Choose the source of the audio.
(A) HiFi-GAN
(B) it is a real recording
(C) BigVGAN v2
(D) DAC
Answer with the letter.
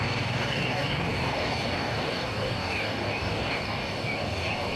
D